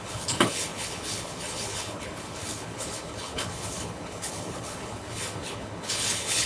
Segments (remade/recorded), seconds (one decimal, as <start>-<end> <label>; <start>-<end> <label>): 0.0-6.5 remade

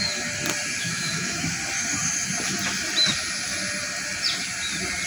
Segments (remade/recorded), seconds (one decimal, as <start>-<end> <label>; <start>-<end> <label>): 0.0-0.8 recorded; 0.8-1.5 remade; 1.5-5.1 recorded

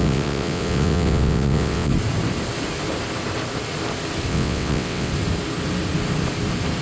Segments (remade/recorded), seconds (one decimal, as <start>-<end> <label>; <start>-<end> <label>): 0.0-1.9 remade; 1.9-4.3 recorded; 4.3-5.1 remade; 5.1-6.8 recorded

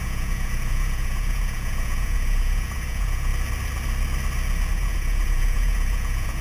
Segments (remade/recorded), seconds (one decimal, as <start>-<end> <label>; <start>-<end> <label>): 0.0-3.3 remade; 3.3-4.7 recorded; 4.7-6.4 remade

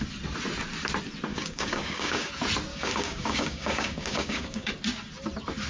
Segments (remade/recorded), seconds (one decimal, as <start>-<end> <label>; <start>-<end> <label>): 0.0-1.3 recorded; 1.3-2.3 remade; 2.3-2.7 recorded; 2.7-4.7 remade; 4.7-5.7 recorded

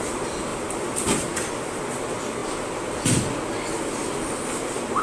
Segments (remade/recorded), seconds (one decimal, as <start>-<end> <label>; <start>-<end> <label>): 0.0-0.5 recorded; 0.5-1.5 remade; 1.5-5.0 recorded